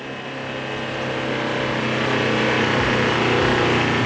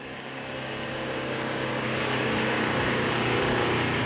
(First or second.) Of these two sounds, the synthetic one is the second